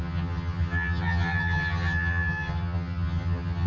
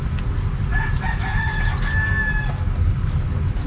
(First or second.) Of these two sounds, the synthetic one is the first